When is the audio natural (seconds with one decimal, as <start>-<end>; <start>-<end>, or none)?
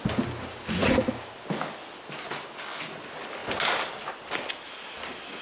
0.0-5.4